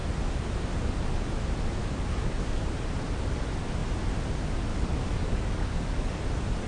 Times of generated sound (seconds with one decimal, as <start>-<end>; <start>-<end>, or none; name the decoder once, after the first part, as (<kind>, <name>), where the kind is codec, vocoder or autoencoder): 1.8-2.6 (codec, DAC); 4.7-6.2